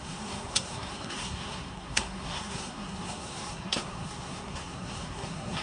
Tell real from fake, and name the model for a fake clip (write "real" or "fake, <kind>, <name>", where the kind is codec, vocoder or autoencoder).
fake, codec, SNAC